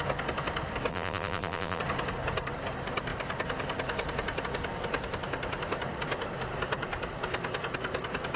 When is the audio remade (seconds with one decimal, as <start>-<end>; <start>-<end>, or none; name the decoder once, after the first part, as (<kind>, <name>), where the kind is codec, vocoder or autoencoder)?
0.9-1.8 (vocoder, BigVGAN v2)